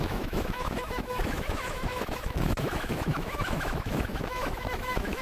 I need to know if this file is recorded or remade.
remade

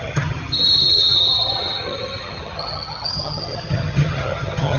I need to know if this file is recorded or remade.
remade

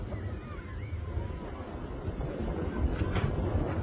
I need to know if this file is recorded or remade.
recorded